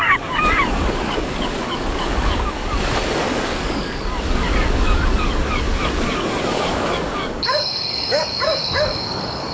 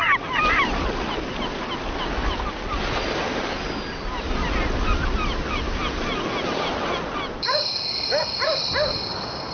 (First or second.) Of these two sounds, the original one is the second